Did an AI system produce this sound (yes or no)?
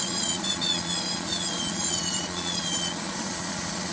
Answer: yes